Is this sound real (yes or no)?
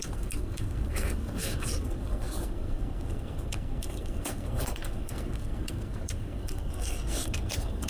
no